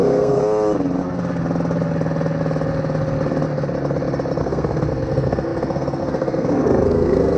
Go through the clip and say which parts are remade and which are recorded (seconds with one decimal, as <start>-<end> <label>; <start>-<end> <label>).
0.0-0.4 remade; 0.4-4.4 recorded; 4.4-7.4 remade